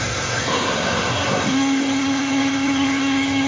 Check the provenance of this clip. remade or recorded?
remade